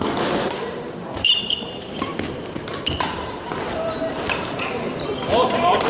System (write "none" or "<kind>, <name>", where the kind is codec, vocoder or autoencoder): vocoder, BigVGAN v2